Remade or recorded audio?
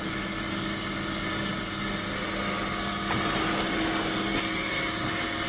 recorded